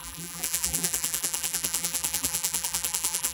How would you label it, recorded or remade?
remade